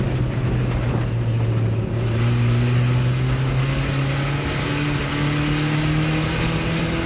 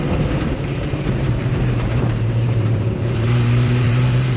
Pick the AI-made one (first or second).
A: second